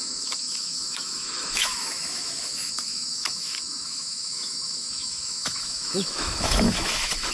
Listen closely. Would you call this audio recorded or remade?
remade